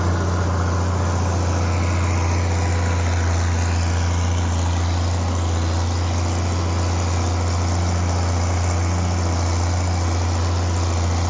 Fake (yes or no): no